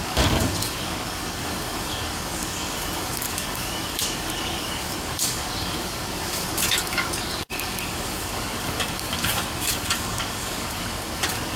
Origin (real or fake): fake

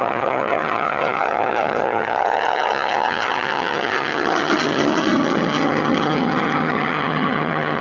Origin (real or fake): fake